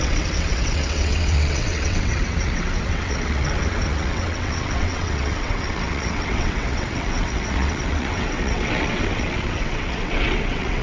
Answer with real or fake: fake